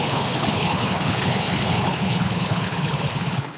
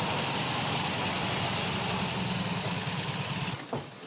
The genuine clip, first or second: second